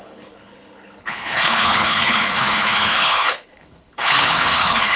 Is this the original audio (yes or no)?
no